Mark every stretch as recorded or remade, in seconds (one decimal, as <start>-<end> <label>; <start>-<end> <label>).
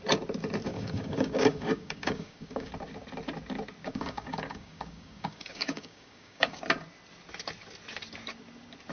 0.0-0.7 recorded; 0.7-2.7 remade; 2.7-3.8 recorded; 3.8-6.6 remade; 6.6-8.9 recorded